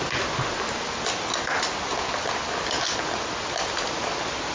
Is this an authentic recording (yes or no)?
yes